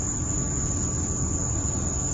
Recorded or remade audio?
recorded